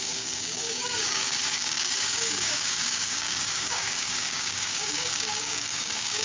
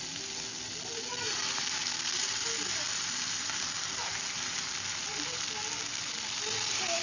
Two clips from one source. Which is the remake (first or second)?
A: first